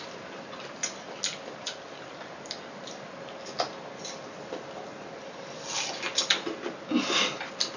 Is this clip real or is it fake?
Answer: real